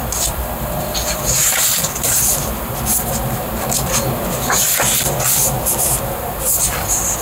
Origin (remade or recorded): remade